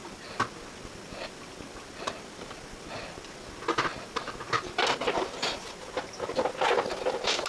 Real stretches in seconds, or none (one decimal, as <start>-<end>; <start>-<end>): 0.0-7.5

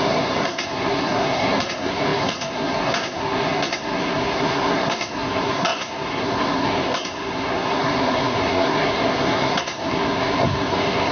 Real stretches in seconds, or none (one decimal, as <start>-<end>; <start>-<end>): none

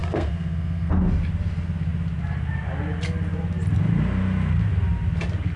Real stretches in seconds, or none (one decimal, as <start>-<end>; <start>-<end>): 0.9-5.6

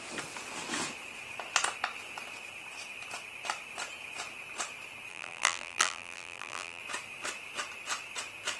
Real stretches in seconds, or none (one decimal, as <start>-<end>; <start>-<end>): 0.0-5.1; 6.8-8.6

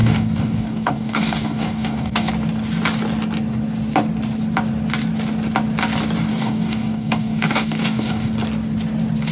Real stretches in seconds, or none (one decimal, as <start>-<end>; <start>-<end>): 2.3-6.3; 8.3-9.3

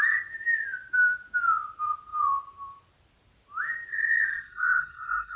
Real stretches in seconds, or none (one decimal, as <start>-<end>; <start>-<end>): 0.0-3.9